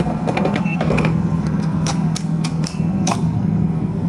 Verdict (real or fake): fake